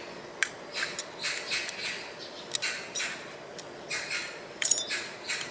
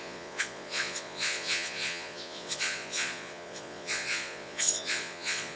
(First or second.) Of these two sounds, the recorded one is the first